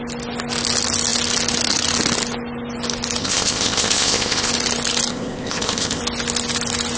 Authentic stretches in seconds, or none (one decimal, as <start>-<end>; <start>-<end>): 0.0-3.2; 4.5-5.1; 6.0-7.0